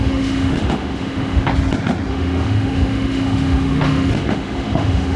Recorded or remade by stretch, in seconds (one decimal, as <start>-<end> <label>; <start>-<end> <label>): 0.0-1.5 remade; 1.5-2.1 recorded; 2.1-5.2 remade